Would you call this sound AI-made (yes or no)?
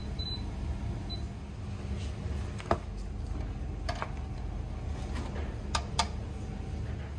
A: no